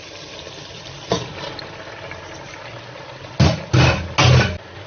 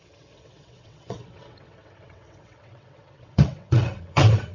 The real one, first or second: first